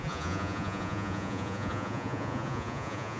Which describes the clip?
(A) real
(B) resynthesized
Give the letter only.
B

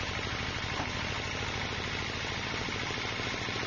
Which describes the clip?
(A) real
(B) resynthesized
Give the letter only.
A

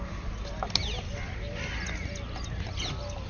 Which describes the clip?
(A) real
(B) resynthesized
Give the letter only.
A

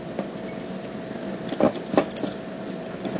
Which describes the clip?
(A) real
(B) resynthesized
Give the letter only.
A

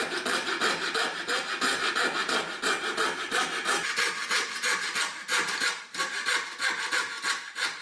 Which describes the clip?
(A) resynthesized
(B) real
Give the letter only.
B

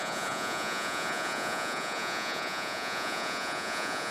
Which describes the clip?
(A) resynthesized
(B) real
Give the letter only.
A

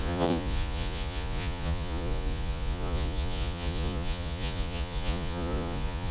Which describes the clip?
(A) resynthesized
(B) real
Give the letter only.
A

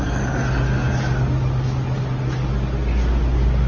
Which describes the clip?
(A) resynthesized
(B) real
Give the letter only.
B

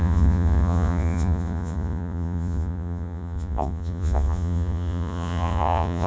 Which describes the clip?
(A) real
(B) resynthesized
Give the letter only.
B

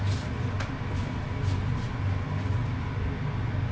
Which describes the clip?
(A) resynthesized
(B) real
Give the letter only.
B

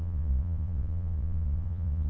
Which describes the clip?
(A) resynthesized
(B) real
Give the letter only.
A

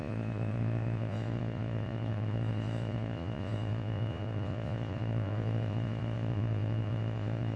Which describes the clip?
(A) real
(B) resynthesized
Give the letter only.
B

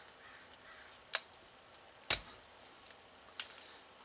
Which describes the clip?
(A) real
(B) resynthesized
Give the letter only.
A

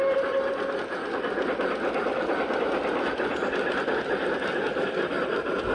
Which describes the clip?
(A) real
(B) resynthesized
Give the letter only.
A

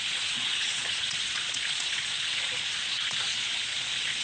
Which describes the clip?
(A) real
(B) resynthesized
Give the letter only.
B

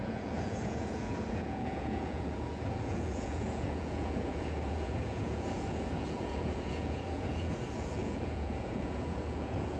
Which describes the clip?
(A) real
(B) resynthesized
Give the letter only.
B